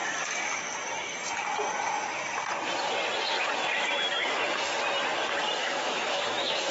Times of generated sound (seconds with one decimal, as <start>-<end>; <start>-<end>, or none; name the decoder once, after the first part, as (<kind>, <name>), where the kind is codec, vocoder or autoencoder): 5.6-6.7 (autoencoder, DAC-VAE)